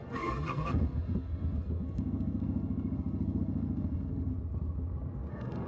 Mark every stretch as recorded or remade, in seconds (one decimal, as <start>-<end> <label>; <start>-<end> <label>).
0.0-4.3 remade; 4.3-5.3 recorded; 5.3-5.7 remade